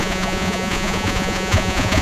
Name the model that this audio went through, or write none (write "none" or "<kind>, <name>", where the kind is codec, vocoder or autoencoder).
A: vocoder, Vocos